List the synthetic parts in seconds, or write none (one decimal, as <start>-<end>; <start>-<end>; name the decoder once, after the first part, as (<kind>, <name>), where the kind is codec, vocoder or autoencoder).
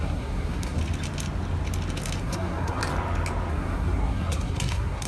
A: 0.0-0.8 (codec, SNAC); 2.2-2.8; 3.5-5.1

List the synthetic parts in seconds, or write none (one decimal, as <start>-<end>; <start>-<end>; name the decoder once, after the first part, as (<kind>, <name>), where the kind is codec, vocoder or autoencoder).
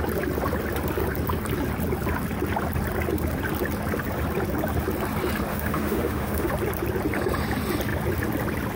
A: 5.5-6.5 (autoencoder, DAC-VAE)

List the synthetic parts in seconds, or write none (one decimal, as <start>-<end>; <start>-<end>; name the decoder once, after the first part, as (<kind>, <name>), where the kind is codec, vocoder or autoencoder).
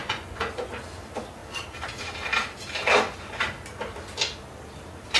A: 0.0-0.7 (vocoder, Vocos)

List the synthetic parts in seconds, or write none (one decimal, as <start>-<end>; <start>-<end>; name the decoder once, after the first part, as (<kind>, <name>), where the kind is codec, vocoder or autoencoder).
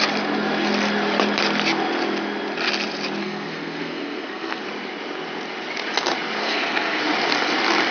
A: 3.2-4.6 (codec, SNAC); 6.4-7.0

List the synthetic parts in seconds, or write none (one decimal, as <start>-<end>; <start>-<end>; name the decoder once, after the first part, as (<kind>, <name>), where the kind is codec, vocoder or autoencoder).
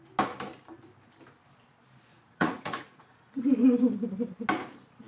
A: 2.1-3.4 (vocoder, Vocos)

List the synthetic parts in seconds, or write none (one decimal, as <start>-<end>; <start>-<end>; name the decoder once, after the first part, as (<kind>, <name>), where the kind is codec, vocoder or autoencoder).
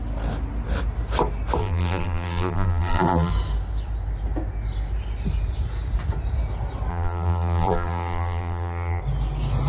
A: 1.6-3.3 (vocoder, BigVGAN v2); 6.9-9.0